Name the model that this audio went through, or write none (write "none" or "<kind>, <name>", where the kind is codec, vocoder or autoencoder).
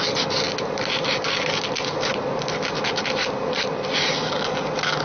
none